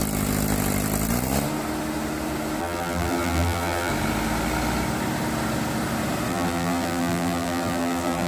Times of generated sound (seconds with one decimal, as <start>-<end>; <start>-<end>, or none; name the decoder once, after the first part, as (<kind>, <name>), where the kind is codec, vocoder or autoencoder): 2.6-3.9 (vocoder, BigVGAN v2); 6.3-8.3